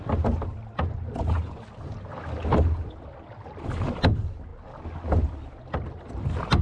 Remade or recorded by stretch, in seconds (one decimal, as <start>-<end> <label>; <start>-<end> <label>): 0.0-6.6 recorded